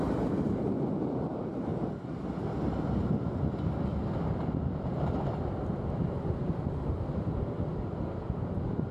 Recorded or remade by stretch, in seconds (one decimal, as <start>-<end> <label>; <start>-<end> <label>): 0.0-1.7 remade; 1.7-2.4 recorded; 2.4-8.9 remade